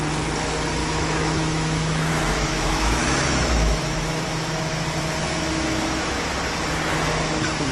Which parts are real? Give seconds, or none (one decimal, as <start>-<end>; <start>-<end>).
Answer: 0.0-0.8; 4.8-5.2; 6.3-7.7